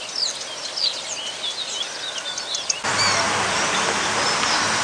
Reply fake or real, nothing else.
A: real